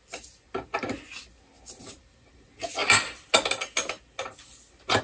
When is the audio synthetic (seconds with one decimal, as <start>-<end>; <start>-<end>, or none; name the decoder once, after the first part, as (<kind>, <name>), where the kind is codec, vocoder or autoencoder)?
none

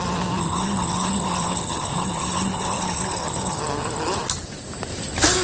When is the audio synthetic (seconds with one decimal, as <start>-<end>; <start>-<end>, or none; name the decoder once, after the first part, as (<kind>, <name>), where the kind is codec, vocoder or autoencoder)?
0.4-3.6 (codec, HILCodec)

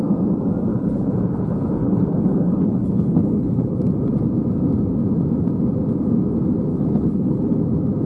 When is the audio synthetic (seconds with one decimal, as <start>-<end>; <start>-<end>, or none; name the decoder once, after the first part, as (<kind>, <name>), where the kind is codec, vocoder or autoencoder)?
0.7-3.8 (codec, HILCodec); 6.7-7.6

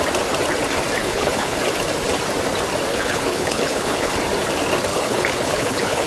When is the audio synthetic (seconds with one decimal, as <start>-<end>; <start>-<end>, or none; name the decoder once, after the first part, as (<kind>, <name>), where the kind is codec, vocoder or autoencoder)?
1.0-1.6 (codec, HILCodec); 2.9-4.1; 4.9-6.1

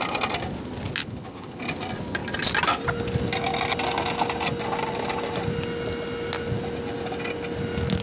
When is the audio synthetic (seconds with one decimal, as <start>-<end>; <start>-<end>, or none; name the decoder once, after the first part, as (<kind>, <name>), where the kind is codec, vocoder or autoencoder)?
1.0-1.6 (codec, HILCodec)

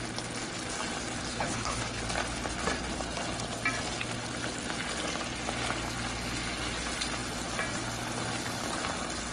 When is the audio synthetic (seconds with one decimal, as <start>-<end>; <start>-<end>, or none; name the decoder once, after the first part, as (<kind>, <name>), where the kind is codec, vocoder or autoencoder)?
1.3-2.0 (codec, HILCodec)

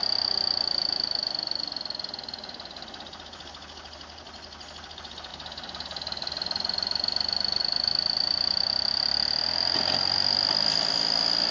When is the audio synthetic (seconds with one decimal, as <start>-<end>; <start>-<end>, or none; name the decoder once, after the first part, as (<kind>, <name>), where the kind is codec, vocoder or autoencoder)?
none